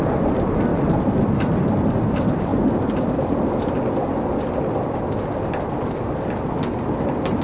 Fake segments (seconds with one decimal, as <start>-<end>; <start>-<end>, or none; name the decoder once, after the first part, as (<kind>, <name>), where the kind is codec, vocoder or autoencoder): none